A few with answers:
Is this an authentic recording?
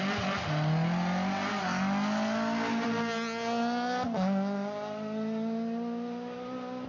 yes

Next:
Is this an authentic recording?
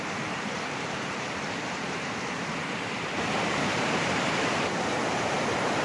no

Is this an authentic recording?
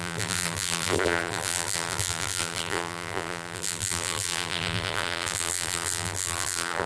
no